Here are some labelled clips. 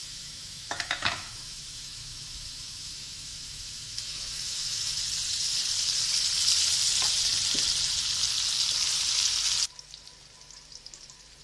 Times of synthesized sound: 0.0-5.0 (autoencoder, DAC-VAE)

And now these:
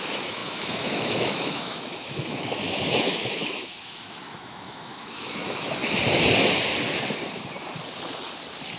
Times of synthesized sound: 0.0-5.8 (autoencoder, DAC-VAE)

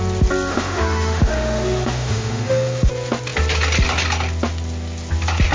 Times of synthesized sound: 0.5-2.9 (autoencoder, DAC-VAE)

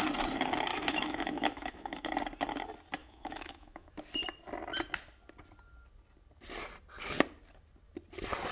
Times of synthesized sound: 0.7-2.1 (autoencoder, DAC-VAE); 3.0-3.9

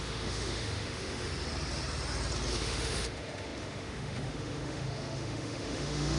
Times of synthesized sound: 0.0-1.3 (autoencoder, DAC-VAE); 2.5-6.2